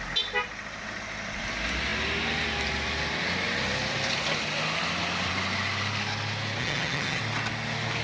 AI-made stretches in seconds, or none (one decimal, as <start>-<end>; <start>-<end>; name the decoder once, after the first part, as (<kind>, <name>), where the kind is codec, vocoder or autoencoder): 6.6-7.2 (vocoder, HiFi-GAN)